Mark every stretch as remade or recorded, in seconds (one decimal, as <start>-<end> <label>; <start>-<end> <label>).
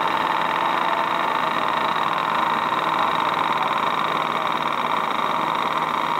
0.0-6.2 recorded